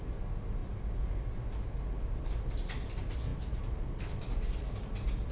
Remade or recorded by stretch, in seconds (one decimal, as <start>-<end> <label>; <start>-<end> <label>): 0.0-5.3 recorded